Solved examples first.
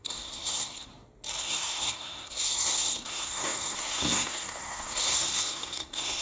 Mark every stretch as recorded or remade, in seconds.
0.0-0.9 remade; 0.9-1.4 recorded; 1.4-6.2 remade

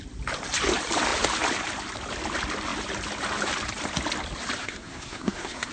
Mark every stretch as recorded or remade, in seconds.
0.0-4.6 recorded; 4.6-5.7 remade

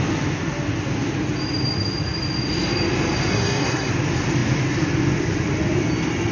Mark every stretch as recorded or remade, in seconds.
0.0-3.3 recorded; 3.3-3.9 remade; 3.9-6.3 recorded

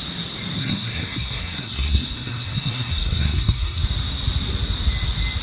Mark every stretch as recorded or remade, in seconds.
0.0-0.6 recorded; 0.6-3.8 remade; 3.8-5.4 recorded

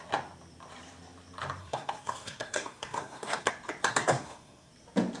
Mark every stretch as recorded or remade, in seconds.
0.0-1.6 recorded; 1.6-3.5 remade; 3.5-3.9 recorded; 3.9-4.7 remade; 4.7-5.2 recorded

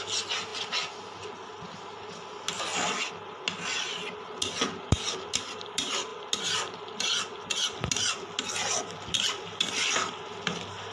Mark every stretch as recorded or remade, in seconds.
0.0-10.9 recorded

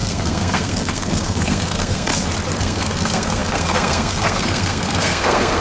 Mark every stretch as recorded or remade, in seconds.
0.0-2.1 remade; 2.1-2.6 recorded; 2.6-5.6 remade